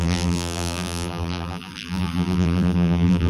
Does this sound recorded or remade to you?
remade